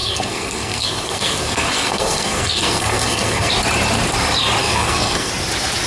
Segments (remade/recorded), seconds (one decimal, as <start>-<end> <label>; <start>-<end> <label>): 0.0-3.5 remade; 3.5-4.6 recorded; 4.6-5.3 remade; 5.3-5.9 recorded